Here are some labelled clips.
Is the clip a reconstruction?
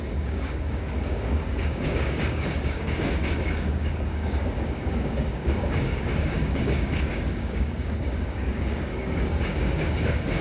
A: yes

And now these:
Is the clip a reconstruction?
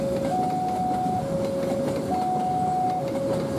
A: no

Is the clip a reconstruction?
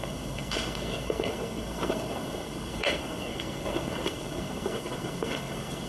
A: yes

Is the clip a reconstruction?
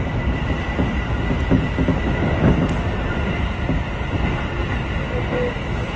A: no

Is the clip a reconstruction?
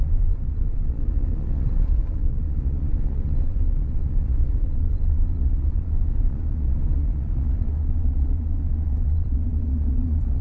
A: yes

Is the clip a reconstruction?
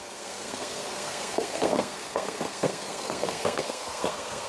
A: yes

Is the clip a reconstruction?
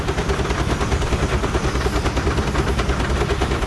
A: no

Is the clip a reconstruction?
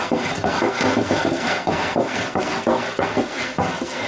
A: yes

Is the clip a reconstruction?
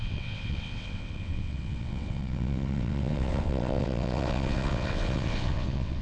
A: yes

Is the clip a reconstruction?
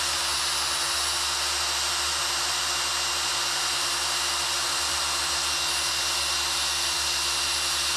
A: no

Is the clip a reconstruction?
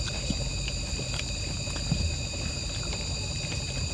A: no